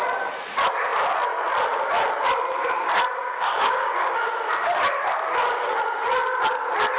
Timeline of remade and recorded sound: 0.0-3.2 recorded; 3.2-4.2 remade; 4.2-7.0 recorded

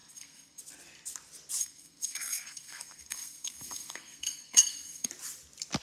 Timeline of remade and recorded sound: 0.0-0.6 remade; 0.6-1.6 recorded; 1.6-5.1 remade; 5.1-5.8 recorded